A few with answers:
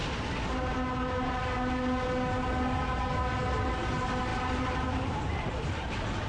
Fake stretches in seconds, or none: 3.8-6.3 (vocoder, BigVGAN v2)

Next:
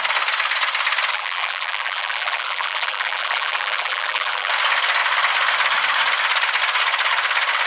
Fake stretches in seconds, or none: 1.1-4.5 (vocoder, BigVGAN v2)

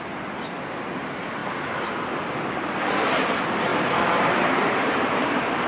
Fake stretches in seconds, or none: 3.7-5.3 (vocoder, BigVGAN v2)

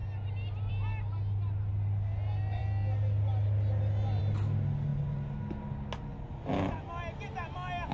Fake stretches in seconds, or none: none

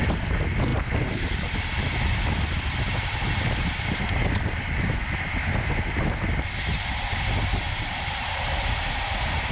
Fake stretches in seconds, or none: 0.7-2.6 (vocoder, BigVGAN v2); 6.7-8.4

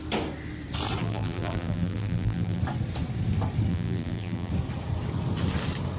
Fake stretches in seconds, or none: 1.0-2.6 (vocoder, BigVGAN v2); 3.7-4.5